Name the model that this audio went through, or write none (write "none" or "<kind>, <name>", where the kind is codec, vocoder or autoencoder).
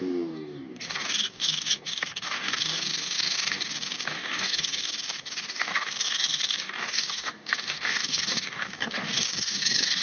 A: codec, DAC